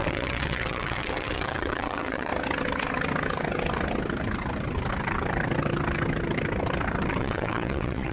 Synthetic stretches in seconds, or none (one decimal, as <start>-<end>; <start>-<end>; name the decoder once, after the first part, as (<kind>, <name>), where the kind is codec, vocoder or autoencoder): 0.0-2.3 (vocoder, WaveNeXt); 7.2-8.1